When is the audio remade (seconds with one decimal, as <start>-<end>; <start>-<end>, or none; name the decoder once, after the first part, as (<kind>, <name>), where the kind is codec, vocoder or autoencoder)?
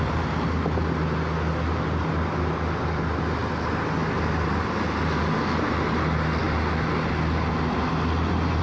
none